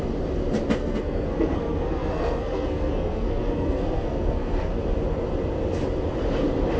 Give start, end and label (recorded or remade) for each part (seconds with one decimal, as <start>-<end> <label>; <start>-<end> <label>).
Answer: 0.0-0.8 recorded; 0.8-4.7 remade; 4.7-6.8 recorded